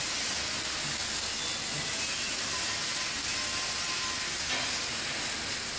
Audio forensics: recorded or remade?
recorded